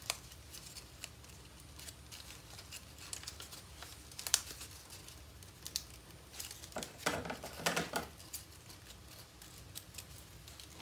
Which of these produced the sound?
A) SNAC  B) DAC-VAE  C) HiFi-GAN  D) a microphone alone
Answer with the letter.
D